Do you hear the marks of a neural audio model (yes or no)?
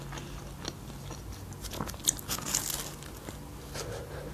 no